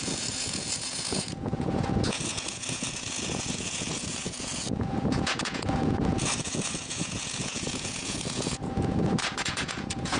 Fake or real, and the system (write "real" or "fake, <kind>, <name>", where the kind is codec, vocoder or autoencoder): fake, vocoder, Vocos